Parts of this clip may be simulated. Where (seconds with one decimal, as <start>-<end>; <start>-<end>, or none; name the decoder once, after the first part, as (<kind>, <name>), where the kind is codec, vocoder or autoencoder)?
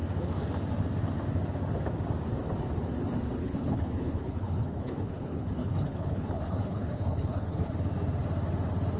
3.4-7.7 (codec, HILCodec)